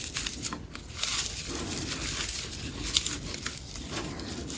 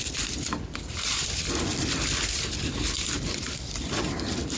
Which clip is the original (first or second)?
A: first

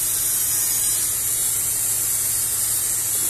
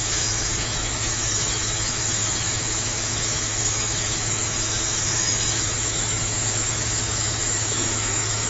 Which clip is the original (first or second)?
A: first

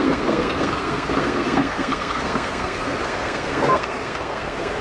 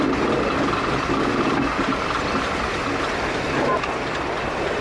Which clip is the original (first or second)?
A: second